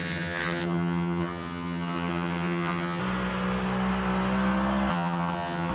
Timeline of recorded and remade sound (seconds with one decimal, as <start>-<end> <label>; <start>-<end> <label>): 0.0-3.0 remade; 3.0-4.9 recorded; 4.9-5.7 remade